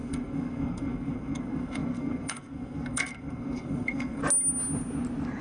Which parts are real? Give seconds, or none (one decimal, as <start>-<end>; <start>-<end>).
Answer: 4.2-5.4